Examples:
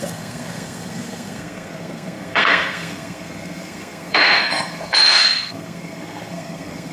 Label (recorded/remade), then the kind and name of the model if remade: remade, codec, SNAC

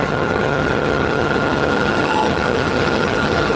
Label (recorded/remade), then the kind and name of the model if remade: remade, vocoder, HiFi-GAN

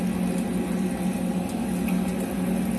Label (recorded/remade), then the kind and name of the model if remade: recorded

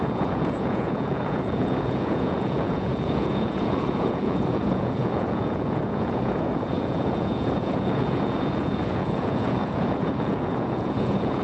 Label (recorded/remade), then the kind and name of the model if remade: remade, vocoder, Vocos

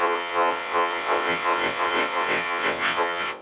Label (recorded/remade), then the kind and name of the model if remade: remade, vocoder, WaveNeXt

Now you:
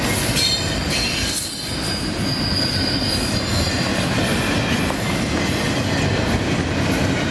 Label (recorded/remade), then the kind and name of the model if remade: recorded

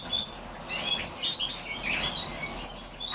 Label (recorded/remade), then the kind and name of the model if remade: recorded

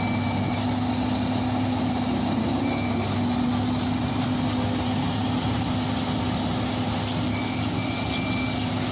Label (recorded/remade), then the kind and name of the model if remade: recorded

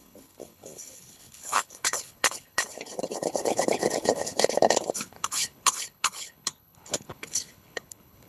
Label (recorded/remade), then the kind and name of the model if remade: remade, codec, HILCodec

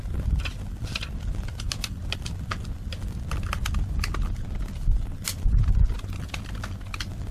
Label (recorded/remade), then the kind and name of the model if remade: recorded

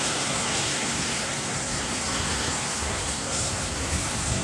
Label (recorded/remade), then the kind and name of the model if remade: remade, codec, SNAC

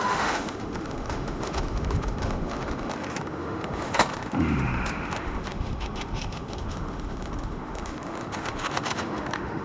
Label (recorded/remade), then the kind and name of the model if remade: remade, autoencoder, DAC-VAE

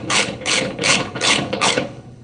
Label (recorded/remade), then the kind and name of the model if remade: remade, codec, HILCodec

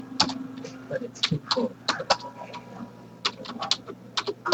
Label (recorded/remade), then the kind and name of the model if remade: recorded